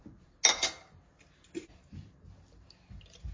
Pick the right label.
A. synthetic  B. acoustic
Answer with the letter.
B